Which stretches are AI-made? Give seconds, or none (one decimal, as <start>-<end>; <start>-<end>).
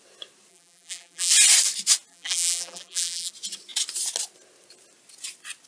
0.5-1.3; 2.1-3.3